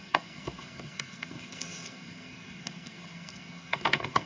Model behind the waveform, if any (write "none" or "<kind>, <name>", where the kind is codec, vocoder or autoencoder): codec, SNAC